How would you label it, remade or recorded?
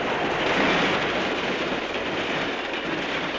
recorded